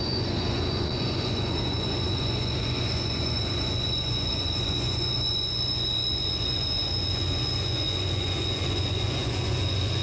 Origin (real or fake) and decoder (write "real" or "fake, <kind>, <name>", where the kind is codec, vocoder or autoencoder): fake, vocoder, Vocos